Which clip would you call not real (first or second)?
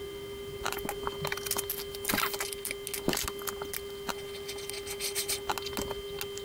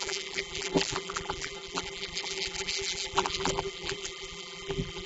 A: second